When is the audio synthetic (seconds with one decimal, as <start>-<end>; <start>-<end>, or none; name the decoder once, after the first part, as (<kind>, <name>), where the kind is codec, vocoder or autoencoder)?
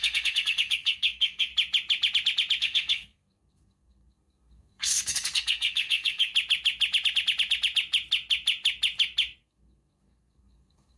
0.0-1.5 (codec, SNAC); 2.6-6.3; 9.4-11.0